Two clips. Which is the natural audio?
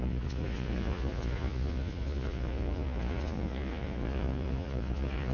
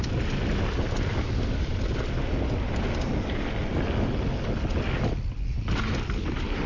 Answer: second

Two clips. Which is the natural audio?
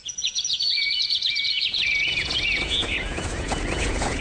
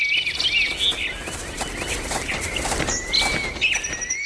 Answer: second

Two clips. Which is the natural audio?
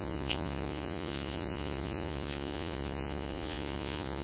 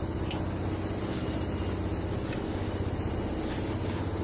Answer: second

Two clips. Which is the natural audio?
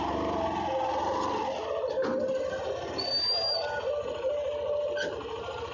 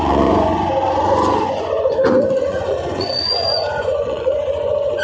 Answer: first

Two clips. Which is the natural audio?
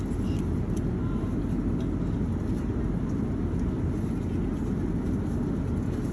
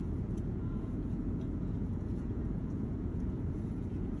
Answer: first